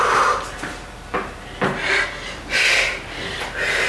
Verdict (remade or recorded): recorded